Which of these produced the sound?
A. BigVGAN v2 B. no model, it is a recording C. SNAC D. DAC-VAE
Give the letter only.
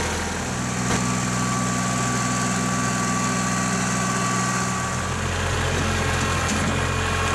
B